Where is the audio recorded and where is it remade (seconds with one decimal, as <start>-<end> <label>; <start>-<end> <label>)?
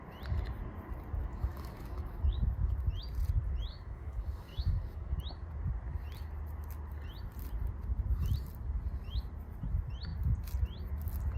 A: 0.0-1.2 recorded; 1.2-2.7 remade; 2.7-3.7 recorded; 3.7-5.2 remade; 5.2-11.4 recorded